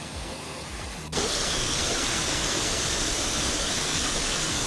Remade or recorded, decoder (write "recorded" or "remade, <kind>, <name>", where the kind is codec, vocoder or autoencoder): remade, codec, SNAC